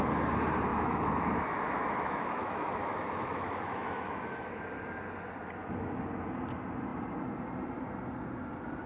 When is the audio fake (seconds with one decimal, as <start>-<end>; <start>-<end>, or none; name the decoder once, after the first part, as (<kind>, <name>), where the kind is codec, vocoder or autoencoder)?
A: 0.7-4.6 (autoencoder, DAC-VAE)